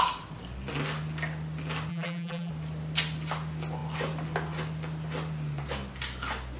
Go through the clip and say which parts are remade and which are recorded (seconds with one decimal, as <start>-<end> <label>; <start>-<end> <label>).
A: 0.0-1.9 recorded; 1.9-2.5 remade; 2.5-6.6 recorded